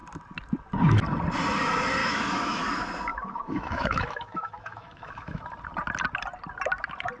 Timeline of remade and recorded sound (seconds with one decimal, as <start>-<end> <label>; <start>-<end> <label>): 0.0-2.0 recorded; 2.0-2.6 remade; 2.6-3.1 recorded; 3.1-5.4 remade; 5.4-7.2 recorded